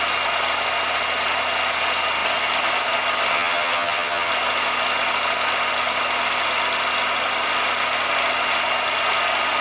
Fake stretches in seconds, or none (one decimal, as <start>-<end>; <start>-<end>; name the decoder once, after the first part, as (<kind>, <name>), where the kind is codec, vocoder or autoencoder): 3.3-4.3 (vocoder, HiFi-GAN)

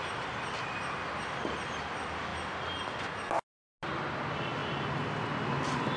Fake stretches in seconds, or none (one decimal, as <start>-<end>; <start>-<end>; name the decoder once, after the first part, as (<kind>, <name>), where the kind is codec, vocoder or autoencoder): none